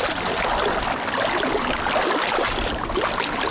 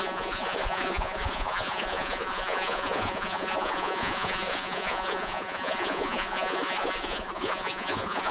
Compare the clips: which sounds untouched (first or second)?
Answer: first